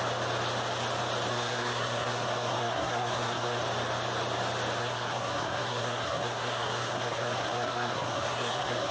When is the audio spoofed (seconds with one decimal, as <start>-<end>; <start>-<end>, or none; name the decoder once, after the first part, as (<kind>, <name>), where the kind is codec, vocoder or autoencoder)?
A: 1.3-3.6 (codec, SNAC); 4.8-8.9